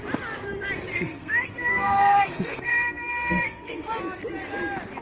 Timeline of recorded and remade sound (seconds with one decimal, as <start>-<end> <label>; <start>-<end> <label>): 0.0-0.9 recorded; 0.9-3.9 remade; 3.9-5.0 recorded